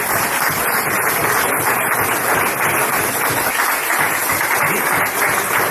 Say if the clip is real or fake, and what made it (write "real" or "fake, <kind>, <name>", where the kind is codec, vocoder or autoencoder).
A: real